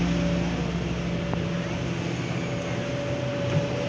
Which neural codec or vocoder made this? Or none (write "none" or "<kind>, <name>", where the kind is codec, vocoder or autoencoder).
none